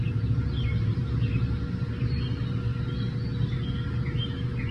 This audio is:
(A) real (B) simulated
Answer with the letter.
A